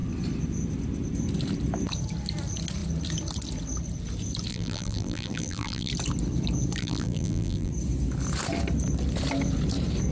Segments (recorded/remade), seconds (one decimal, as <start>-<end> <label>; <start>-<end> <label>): 0.0-4.5 recorded; 4.5-5.9 remade; 5.9-6.8 recorded; 6.8-7.7 remade; 7.7-10.1 recorded